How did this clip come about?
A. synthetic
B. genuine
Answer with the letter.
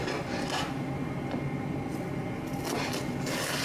B